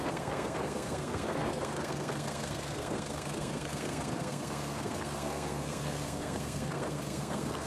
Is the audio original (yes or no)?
no